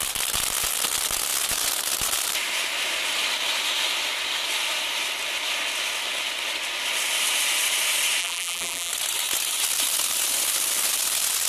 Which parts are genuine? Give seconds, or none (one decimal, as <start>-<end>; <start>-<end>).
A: 0.0-8.2; 8.9-11.5